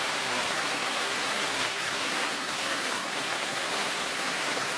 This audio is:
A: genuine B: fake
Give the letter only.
B